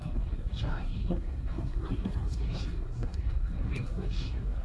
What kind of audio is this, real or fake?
fake